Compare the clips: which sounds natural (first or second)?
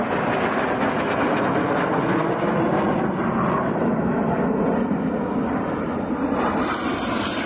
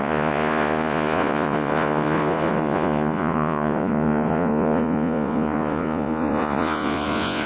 first